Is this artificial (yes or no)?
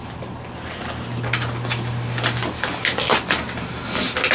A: no